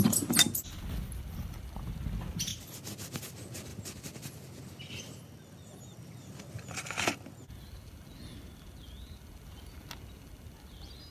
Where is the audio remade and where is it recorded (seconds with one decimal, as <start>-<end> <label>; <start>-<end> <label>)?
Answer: 0.0-11.1 recorded